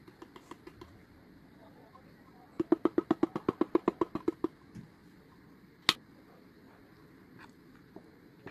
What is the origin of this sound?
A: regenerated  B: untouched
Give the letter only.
B